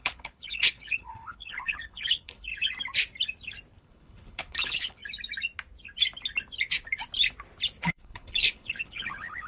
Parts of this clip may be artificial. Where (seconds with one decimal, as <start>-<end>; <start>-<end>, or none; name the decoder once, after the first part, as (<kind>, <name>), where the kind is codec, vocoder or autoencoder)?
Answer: 0.0-2.5 (codec, HILCodec); 3.8-5.0; 7.8-9.5